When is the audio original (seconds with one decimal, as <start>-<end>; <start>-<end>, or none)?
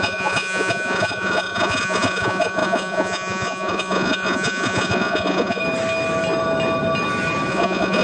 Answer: 5.6-7.5